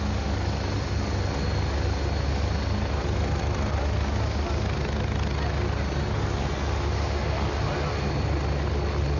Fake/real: real